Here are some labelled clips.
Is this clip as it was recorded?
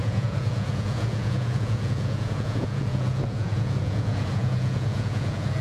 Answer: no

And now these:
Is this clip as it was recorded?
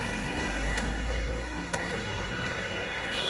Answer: no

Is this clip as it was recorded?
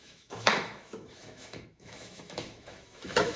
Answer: no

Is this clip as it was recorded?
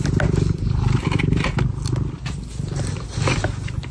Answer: yes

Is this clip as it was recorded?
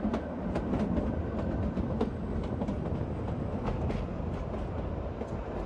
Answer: yes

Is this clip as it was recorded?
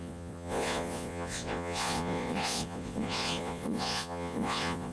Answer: no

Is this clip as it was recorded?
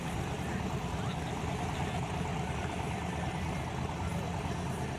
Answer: yes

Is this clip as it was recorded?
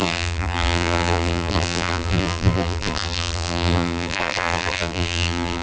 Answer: no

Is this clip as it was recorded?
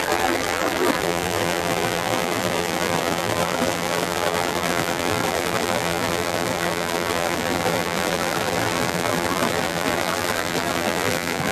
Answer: no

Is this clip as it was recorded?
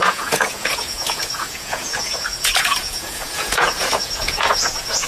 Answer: no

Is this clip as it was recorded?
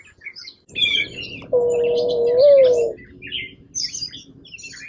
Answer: yes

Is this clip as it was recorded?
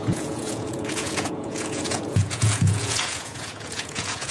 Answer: no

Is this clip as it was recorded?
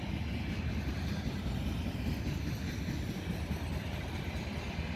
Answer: yes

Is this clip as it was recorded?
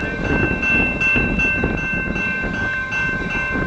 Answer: yes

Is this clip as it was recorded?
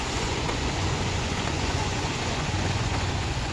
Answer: no